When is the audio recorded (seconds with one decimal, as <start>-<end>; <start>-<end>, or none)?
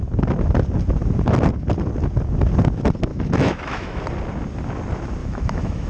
0.0-3.1; 4.0-5.2